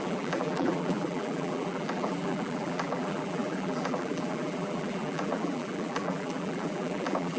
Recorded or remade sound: remade